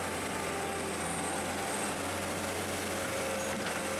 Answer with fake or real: real